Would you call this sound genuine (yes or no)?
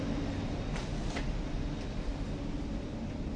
yes